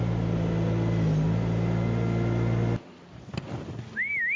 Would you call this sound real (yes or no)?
yes